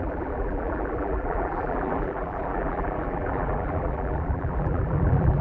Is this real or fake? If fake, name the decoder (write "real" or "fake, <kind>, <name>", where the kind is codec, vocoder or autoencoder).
fake, vocoder, BigVGAN v2